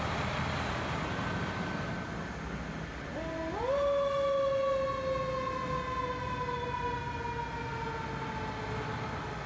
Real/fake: real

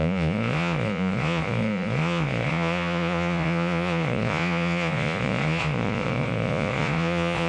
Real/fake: fake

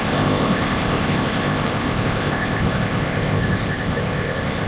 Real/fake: fake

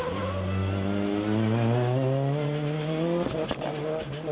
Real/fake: real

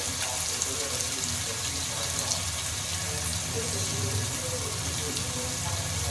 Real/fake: real